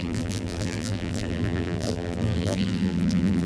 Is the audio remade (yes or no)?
yes